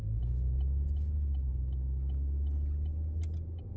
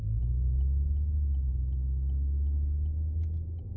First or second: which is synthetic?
second